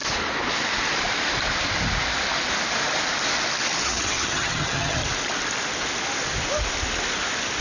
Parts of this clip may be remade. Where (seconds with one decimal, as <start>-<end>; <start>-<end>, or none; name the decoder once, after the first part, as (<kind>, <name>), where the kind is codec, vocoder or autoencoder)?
3.8-5.0 (vocoder, HiFi-GAN)